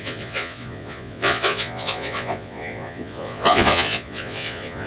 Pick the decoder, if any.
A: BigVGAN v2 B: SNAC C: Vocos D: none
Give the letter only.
C